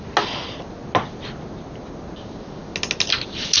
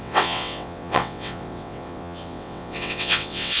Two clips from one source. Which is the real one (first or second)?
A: first